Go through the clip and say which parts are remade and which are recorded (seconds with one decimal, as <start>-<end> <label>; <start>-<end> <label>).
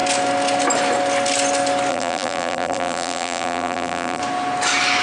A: 0.0-1.9 recorded; 1.9-4.2 remade; 4.2-5.0 recorded